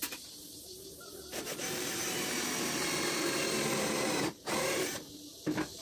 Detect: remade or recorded remade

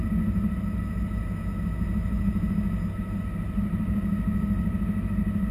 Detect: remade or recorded recorded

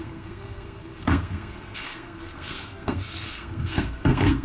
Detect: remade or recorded remade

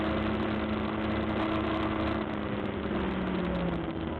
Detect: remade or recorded recorded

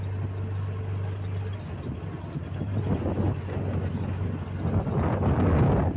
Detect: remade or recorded recorded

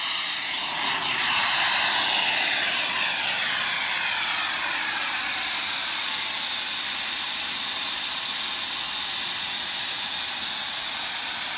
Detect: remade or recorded recorded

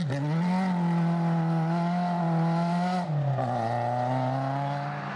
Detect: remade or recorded recorded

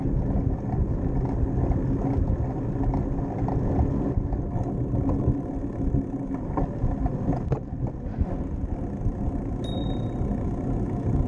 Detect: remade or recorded recorded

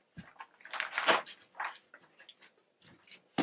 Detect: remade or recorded recorded